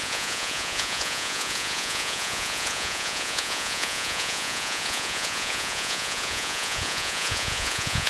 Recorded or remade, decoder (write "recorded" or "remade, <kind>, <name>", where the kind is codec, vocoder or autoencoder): remade, vocoder, Vocos